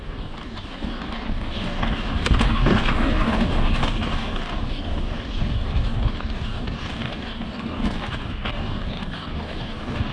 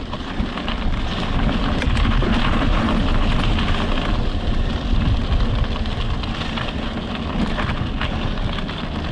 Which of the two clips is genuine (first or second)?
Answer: second